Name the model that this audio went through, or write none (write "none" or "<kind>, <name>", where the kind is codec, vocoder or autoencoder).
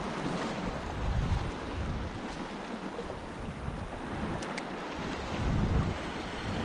none